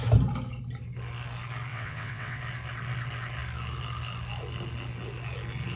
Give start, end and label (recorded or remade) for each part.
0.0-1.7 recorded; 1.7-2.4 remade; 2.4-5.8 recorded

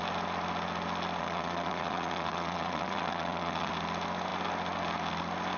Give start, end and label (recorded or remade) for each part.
0.0-1.2 recorded; 1.2-3.7 remade; 3.7-5.6 recorded